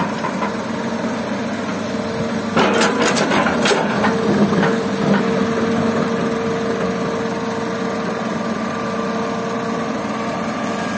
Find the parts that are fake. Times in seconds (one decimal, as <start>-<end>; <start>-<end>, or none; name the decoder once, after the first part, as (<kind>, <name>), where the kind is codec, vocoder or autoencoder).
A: none